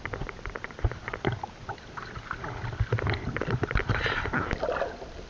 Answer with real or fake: real